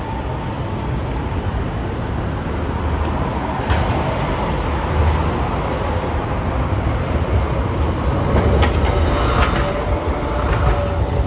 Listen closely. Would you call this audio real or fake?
real